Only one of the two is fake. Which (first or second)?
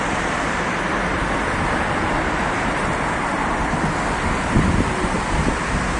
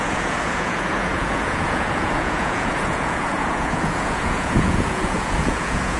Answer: second